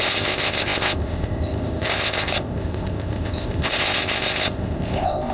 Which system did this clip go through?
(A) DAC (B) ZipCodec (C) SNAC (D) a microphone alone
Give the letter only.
B